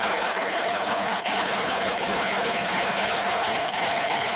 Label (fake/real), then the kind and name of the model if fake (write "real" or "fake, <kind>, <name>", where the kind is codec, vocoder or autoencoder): fake, codec, HILCodec